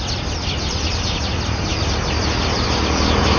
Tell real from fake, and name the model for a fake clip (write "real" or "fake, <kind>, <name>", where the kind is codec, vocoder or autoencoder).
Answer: real